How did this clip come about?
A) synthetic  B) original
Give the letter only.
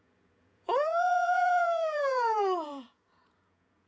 A